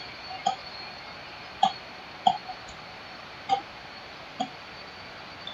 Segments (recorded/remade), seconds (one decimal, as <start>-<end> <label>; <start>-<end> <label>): 0.0-5.5 recorded

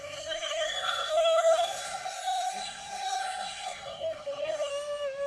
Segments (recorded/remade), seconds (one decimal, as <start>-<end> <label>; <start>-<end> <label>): 0.0-4.7 remade; 4.7-5.3 recorded

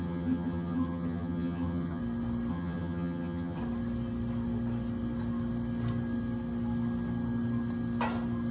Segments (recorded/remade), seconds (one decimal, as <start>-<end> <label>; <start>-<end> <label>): 0.0-2.0 remade; 2.0-2.5 recorded; 2.5-3.6 remade; 3.6-8.5 recorded

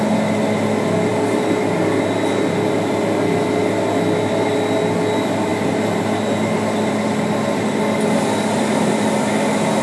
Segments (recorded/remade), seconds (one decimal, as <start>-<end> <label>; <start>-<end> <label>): 0.0-5.5 recorded; 5.5-9.3 remade; 9.3-9.8 recorded

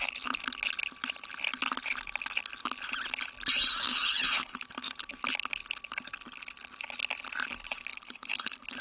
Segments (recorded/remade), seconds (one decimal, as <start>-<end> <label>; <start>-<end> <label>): 0.0-3.9 recorded; 3.9-4.6 remade; 4.6-7.9 recorded; 7.9-8.8 remade

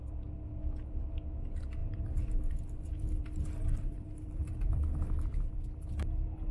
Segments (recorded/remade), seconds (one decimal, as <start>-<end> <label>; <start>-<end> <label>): 0.0-1.8 recorded; 1.8-4.8 remade; 4.8-6.5 recorded